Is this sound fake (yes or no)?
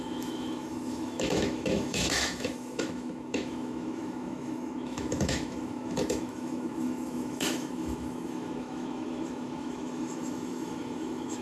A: yes